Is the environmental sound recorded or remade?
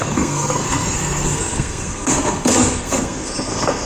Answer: remade